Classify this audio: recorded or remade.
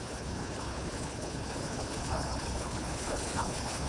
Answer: remade